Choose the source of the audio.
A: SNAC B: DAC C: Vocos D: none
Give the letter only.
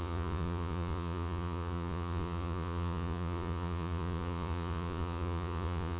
C